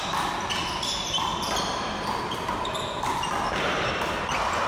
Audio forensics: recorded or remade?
recorded